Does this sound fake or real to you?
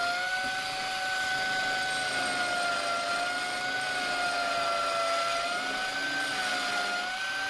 real